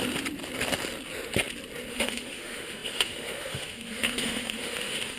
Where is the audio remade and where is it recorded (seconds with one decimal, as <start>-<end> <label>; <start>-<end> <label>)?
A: 0.0-1.9 recorded; 1.9-5.2 remade